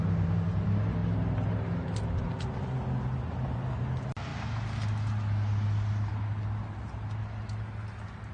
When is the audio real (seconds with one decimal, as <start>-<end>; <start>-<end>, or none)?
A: 0.0-8.3